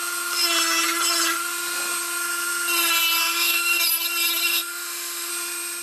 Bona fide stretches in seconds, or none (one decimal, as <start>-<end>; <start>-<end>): 0.0-3.2; 3.8-4.5; 5.3-5.8